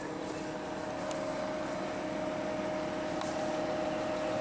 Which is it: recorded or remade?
recorded